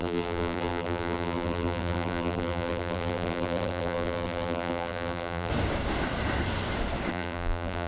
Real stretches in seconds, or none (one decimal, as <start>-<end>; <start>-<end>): 5.5-7.1